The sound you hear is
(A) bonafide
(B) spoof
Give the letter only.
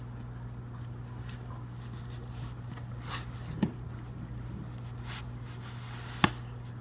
A